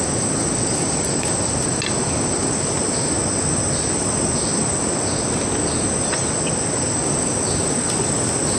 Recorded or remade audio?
recorded